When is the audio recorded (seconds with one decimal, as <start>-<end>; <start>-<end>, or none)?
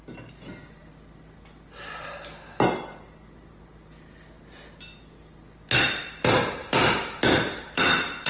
0.0-6.6; 7.9-8.3